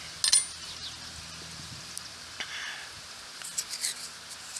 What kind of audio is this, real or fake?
real